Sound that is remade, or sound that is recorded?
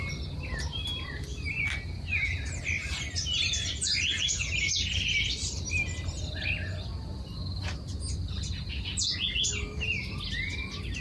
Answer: recorded